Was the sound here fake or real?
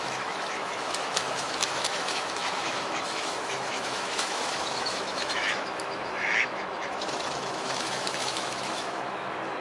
fake